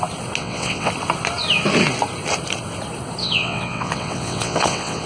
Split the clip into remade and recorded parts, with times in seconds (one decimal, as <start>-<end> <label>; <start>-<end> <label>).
0.0-0.4 recorded; 0.4-0.9 remade; 0.9-3.2 recorded; 3.2-5.1 remade

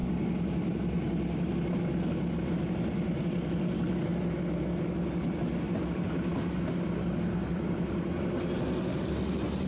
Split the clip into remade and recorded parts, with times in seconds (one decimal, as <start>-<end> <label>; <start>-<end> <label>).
0.0-9.7 recorded

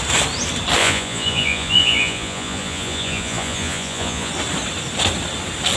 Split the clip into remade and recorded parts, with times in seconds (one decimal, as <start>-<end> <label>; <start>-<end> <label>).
0.0-0.8 recorded; 0.8-4.3 remade; 4.3-5.8 recorded

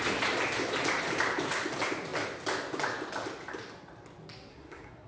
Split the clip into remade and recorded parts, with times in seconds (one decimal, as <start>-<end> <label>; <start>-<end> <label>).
0.0-4.5 recorded; 4.5-5.1 remade

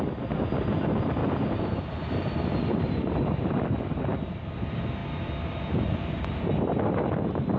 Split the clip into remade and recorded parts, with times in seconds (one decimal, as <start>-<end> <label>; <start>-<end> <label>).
0.0-1.2 recorded; 1.2-2.9 remade; 2.9-7.6 recorded

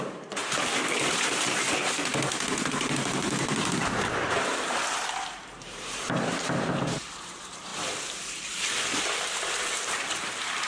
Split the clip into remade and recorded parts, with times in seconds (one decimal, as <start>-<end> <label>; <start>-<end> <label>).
0.0-0.4 remade; 0.4-2.7 recorded; 2.7-10.7 remade